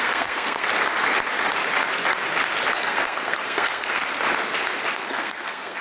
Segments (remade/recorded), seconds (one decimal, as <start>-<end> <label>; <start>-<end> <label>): 0.0-0.7 remade; 0.7-2.7 recorded; 2.7-4.0 remade; 4.0-4.9 recorded; 4.9-5.8 remade